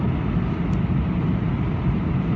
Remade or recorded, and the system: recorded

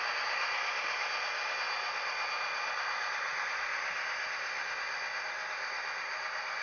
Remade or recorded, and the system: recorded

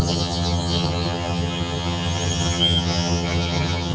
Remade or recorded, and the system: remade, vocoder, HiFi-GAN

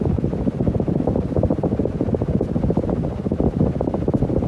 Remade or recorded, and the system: recorded